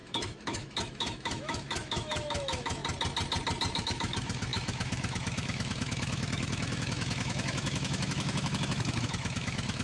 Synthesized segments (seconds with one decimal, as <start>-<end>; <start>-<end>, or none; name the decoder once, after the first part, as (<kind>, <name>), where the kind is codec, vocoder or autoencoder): 0.0-2.8 (autoencoder, DAC-VAE); 3.8-9.8